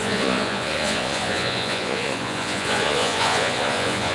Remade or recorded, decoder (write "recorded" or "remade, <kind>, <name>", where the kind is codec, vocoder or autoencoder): remade, vocoder, Vocos